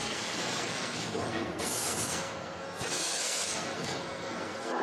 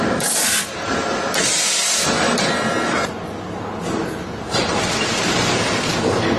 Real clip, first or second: second